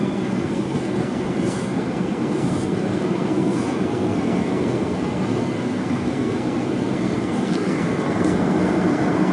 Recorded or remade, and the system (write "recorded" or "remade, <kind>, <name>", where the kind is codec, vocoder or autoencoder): remade, codec, SNAC